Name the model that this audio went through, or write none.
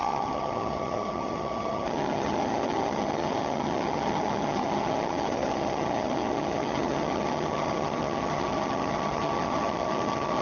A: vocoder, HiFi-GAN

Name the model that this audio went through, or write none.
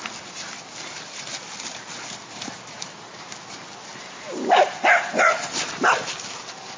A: none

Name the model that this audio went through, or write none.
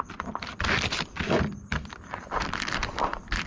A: none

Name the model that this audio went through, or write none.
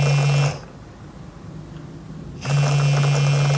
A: none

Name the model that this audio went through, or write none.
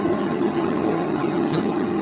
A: vocoder, HiFi-GAN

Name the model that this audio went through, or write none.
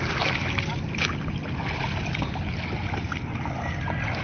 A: none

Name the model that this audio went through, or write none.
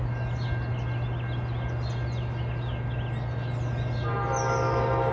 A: none